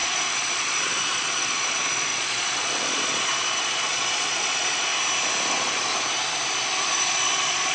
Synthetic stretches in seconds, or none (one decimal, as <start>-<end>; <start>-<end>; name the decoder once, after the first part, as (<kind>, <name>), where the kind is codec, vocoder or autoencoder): 0.0-4.9 (vocoder, Vocos); 5.5-5.9; 6.8-7.7